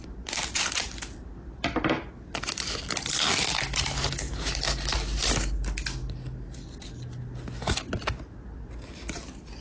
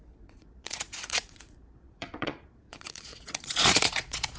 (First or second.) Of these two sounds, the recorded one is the first